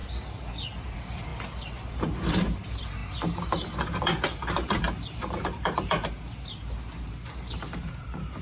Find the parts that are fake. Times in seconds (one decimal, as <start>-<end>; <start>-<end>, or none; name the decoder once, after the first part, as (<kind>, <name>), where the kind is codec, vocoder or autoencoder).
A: 0.9-1.3 (vocoder, BigVGAN v2); 1.9-8.4